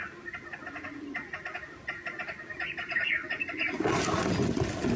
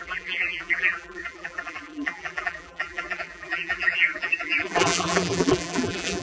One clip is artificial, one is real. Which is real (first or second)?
first